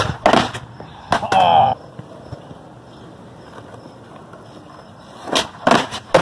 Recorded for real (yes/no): yes